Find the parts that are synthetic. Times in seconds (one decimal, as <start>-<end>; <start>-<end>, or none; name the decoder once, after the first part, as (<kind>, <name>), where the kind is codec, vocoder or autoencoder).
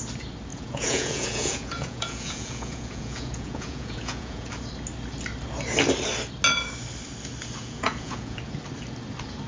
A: 0.5-4.5 (vocoder, Vocos); 7.6-8.4